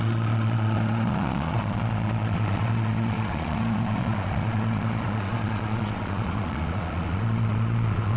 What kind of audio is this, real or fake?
fake